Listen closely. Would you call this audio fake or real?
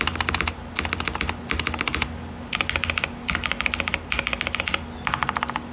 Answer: real